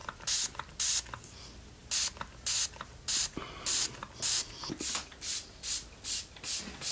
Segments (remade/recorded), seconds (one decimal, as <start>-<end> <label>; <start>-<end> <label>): 0.0-6.9 recorded